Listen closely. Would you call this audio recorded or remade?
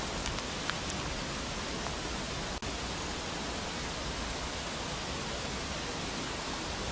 recorded